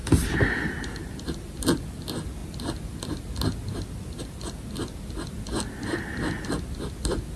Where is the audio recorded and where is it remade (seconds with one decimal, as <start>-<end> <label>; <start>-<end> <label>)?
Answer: 0.0-7.4 recorded